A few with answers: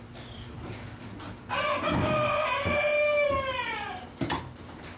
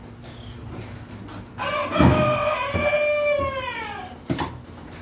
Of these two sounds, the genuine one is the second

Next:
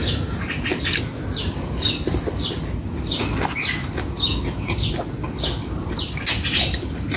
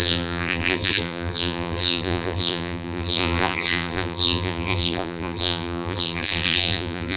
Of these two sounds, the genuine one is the first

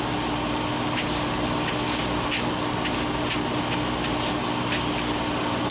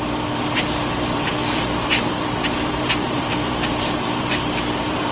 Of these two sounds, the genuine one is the first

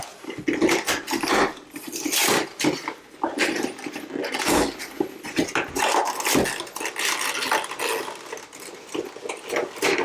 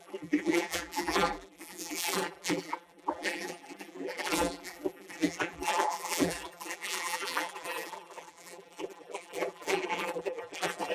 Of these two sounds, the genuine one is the first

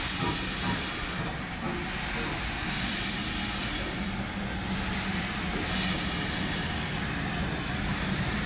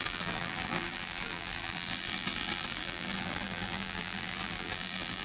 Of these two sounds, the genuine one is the first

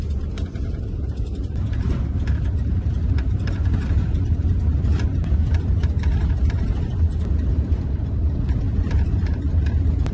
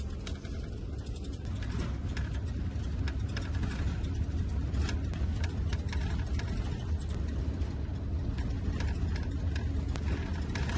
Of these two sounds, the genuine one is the second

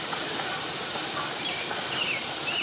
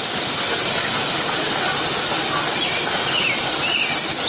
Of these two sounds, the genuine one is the second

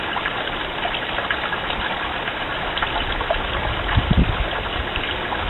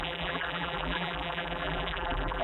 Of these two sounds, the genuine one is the first